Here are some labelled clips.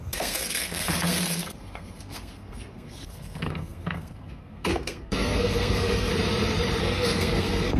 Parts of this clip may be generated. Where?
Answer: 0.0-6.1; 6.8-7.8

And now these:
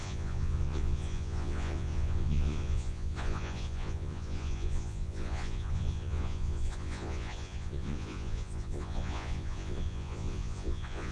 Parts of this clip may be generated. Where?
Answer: 0.0-11.1

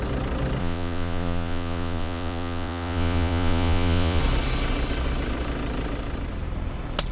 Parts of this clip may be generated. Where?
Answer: 0.6-4.2

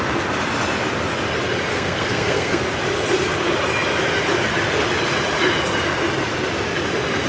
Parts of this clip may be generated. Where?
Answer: 1.7-2.6

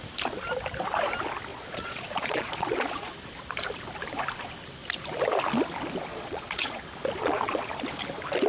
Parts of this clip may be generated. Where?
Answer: 1.5-3.1; 6.1-6.8; 7.2-7.7

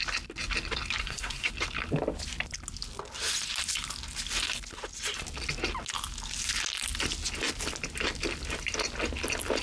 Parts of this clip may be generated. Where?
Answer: 1.0-1.5

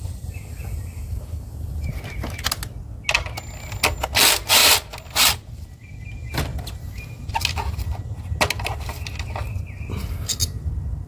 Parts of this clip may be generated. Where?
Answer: none